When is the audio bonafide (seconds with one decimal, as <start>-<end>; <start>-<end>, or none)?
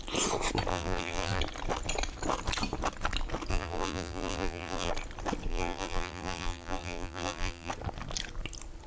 0.0-0.7; 1.4-3.5; 4.9-5.5; 7.7-8.9